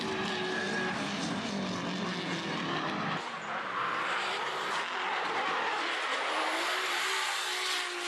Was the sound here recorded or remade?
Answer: recorded